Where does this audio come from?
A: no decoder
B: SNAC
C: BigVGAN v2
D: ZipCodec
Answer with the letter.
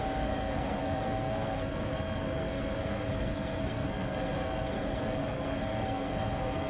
B